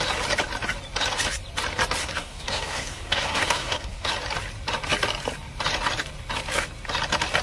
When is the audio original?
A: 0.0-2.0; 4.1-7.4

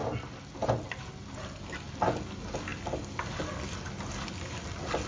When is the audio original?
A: 0.0-5.1

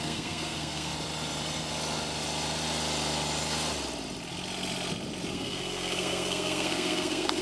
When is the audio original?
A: 0.9-5.3

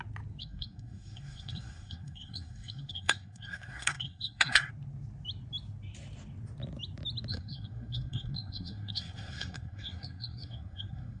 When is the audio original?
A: 0.0-0.4; 4.7-7.3

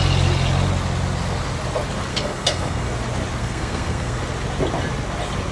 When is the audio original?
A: 0.0-2.1; 2.9-3.4; 4.2-5.5

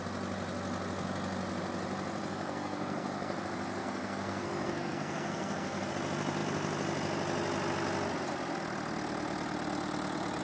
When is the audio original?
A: 0.0-2.3; 3.4-3.8; 5.9-10.4

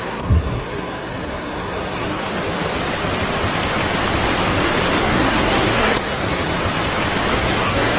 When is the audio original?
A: 2.3-5.0; 6.6-7.3